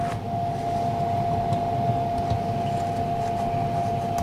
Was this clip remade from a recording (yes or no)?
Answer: no